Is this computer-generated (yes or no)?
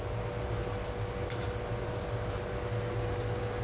no